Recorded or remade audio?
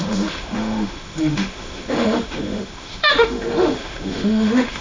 remade